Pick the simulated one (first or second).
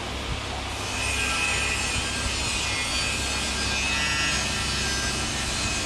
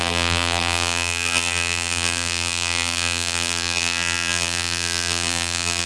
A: second